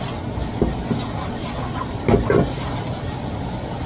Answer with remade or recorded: recorded